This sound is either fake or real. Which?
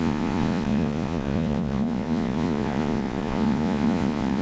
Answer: fake